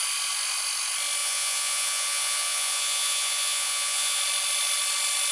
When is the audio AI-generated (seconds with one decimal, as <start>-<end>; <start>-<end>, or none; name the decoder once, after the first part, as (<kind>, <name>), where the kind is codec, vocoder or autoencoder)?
1.2-4.2 (vocoder, Vocos)